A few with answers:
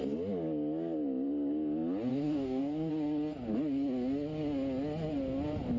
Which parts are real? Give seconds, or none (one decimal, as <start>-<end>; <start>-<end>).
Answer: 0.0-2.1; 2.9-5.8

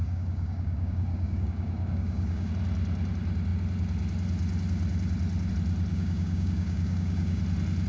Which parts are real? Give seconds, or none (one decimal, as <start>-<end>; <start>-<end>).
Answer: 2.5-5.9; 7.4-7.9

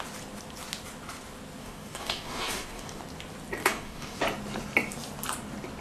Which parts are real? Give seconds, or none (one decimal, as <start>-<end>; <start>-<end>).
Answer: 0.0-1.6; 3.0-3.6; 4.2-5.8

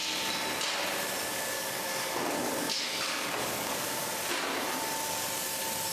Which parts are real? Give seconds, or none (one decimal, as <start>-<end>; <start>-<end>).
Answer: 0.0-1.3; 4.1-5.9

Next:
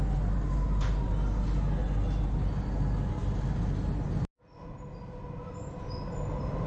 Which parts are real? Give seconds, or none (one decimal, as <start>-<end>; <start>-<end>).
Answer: 0.0-6.7